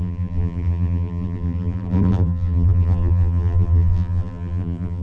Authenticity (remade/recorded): remade